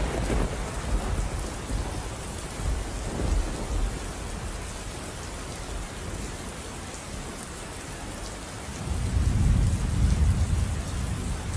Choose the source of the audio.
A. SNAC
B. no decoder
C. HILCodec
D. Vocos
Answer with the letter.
B